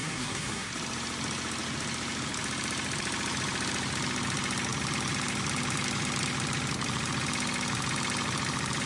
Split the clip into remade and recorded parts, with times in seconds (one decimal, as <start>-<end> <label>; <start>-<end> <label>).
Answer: 0.0-0.7 remade; 0.7-8.9 recorded